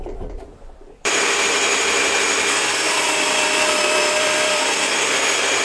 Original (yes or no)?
no